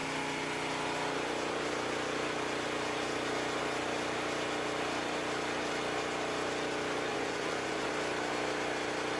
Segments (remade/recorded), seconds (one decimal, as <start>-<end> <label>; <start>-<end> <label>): 0.0-7.1 recorded; 7.1-7.9 remade; 7.9-9.2 recorded